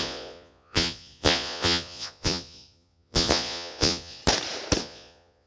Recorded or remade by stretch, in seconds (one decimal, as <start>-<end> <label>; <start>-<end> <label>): 0.0-4.2 remade; 4.2-4.8 recorded; 4.8-5.5 remade